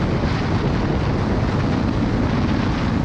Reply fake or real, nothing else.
real